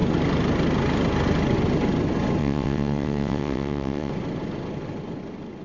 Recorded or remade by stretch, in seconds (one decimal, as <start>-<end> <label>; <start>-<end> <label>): 0.0-2.4 recorded; 2.4-4.1 remade; 4.1-5.6 recorded

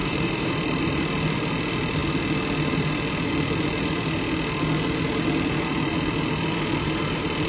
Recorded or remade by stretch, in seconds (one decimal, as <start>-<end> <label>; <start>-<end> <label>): 0.0-0.8 remade; 0.8-7.5 recorded

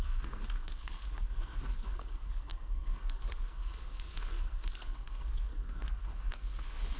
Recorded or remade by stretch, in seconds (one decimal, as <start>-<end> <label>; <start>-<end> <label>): 0.0-7.0 remade

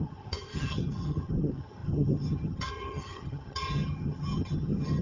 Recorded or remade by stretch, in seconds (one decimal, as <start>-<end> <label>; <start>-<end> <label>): 0.0-5.0 remade

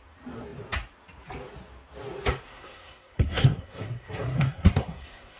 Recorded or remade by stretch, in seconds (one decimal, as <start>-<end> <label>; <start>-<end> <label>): 0.0-2.5 recorded; 2.5-5.4 remade

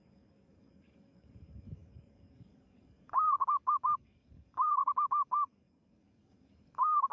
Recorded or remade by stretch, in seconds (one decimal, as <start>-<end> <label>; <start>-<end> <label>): 0.0-7.1 remade